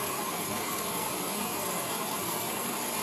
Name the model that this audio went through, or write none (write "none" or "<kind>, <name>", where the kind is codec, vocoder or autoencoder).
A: codec, SNAC